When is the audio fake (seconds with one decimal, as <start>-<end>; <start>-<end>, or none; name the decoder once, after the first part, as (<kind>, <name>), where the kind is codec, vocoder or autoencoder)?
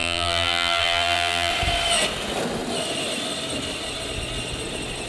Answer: 0.0-1.5 (vocoder, BigVGAN v2)